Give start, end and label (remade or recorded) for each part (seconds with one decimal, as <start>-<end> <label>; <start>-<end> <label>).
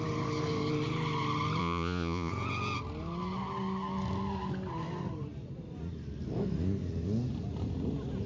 0.0-1.6 recorded; 1.6-2.3 remade; 2.3-8.3 recorded